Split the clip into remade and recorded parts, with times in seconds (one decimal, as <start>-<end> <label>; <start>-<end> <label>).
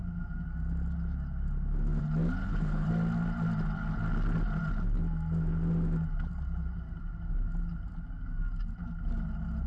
0.0-2.4 recorded; 2.4-2.9 remade; 2.9-9.7 recorded